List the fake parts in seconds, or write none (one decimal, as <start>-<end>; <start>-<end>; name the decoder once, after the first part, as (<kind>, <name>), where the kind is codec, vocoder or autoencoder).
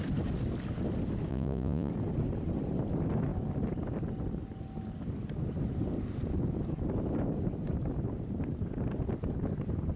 1.3-1.9 (vocoder, Vocos)